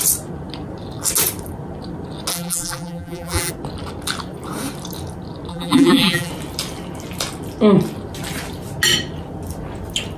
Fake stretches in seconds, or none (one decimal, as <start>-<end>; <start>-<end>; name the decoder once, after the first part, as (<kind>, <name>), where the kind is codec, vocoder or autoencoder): 2.3-3.5 (vocoder, BigVGAN v2); 5.5-6.3